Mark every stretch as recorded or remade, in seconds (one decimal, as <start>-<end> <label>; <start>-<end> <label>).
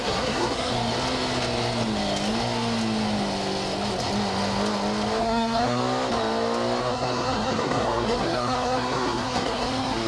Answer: 0.0-0.7 remade; 0.7-5.2 recorded; 5.2-5.8 remade; 5.8-6.8 recorded; 6.8-10.1 remade